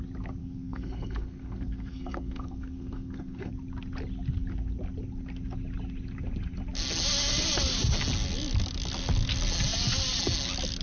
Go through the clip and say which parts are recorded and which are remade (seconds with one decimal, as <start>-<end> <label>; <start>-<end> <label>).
0.0-0.4 recorded; 0.4-3.5 remade; 3.5-10.8 recorded